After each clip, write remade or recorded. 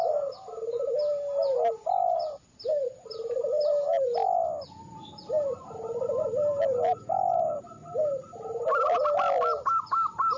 remade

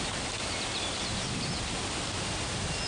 remade